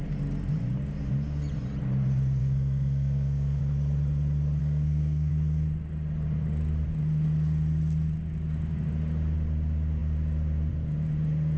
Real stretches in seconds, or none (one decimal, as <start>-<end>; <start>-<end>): 0.0-2.4; 3.6-4.6; 5.3-11.6